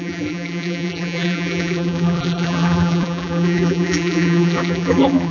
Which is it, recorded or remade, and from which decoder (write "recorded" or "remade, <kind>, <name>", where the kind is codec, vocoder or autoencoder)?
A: remade, vocoder, BigVGAN v2